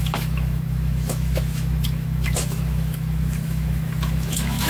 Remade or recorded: remade